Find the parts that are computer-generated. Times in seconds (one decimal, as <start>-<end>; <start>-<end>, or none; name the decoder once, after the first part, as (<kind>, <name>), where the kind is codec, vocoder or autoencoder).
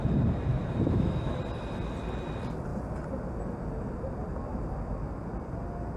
0.5-1.4 (autoencoder, DAC-VAE)